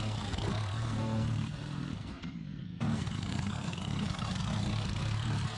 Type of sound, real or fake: fake